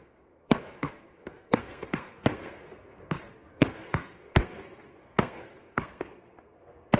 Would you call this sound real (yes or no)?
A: no